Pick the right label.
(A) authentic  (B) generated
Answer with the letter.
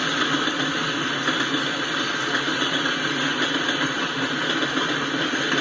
A